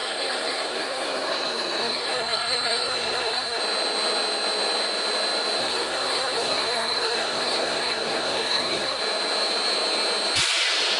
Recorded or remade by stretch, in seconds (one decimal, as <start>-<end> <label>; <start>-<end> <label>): 0.0-3.6 remade; 3.6-5.6 recorded; 5.6-9.0 remade; 9.0-11.0 recorded